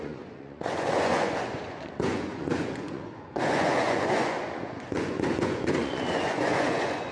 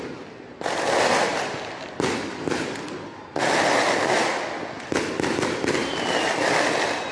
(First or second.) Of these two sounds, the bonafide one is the second